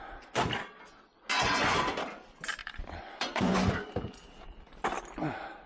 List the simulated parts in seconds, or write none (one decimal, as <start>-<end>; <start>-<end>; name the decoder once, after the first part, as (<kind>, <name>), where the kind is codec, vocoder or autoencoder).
1.3-1.9 (vocoder, Vocos); 2.6-3.7